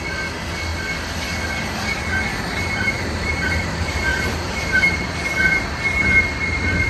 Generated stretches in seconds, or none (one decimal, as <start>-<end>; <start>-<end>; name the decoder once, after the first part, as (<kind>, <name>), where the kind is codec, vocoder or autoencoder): 2.3-3.5 (vocoder, BigVGAN v2); 4.1-6.2